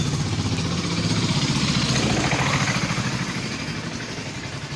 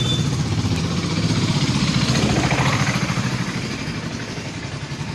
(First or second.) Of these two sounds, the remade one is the second